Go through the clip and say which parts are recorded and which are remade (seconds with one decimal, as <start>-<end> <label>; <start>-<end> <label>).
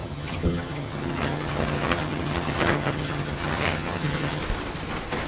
0.0-4.4 remade; 4.4-5.3 recorded